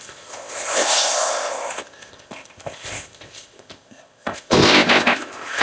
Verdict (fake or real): fake